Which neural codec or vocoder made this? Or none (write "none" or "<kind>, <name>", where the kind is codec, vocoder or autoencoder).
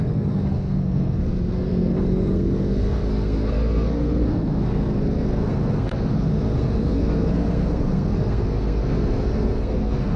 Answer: codec, SNAC